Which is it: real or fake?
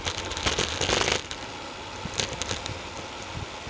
real